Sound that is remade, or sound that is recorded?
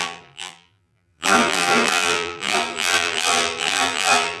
remade